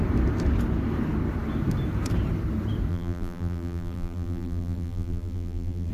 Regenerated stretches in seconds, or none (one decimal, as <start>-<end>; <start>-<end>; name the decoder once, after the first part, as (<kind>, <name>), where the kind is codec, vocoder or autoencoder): 2.9-5.9 (vocoder, BigVGAN v2)